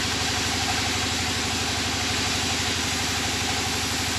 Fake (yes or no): no